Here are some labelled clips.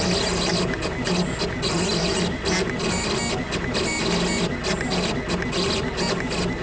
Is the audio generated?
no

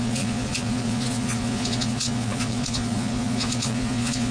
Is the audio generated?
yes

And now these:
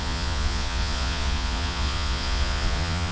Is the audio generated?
yes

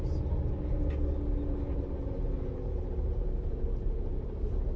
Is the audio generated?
no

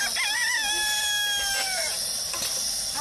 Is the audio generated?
no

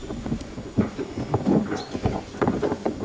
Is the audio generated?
yes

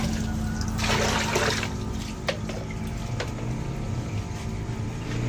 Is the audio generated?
no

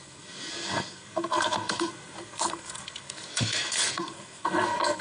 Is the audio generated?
yes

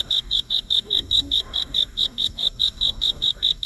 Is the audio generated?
yes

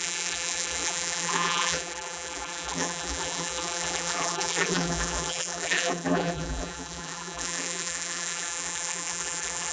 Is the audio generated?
yes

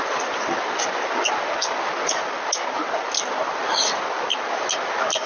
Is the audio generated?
no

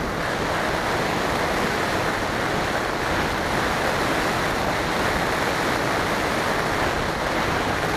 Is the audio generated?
no